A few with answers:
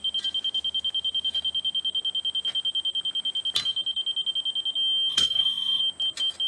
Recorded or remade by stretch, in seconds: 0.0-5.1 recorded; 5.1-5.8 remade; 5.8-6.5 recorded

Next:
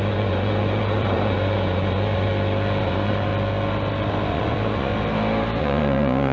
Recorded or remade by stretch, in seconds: 0.0-2.3 remade; 2.3-2.8 recorded; 2.8-3.3 remade; 3.3-4.3 recorded; 4.3-4.9 remade; 4.9-5.6 recorded; 5.6-6.3 remade